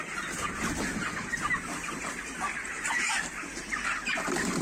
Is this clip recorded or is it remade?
recorded